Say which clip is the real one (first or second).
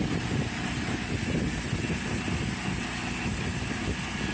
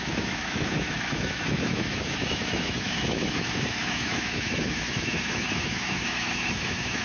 first